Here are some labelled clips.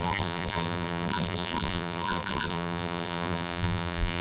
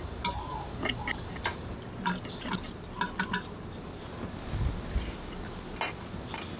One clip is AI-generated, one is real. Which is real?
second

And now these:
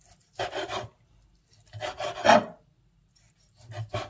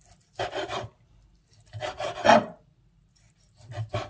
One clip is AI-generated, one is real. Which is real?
first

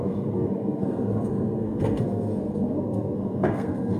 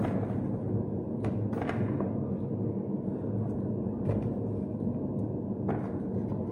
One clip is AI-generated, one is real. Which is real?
second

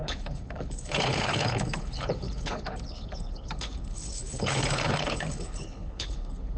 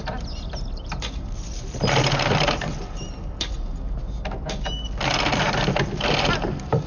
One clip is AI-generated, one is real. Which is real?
second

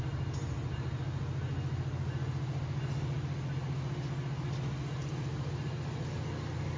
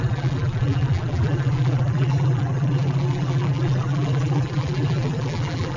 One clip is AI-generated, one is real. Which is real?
first